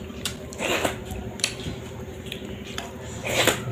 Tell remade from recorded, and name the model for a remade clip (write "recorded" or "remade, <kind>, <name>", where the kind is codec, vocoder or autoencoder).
remade, vocoder, BigVGAN v2